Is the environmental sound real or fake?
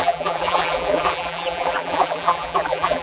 fake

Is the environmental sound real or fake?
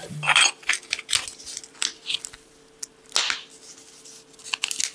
real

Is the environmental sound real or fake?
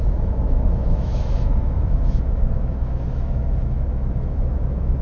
fake